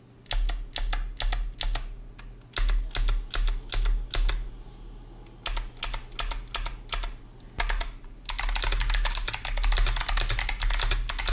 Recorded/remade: recorded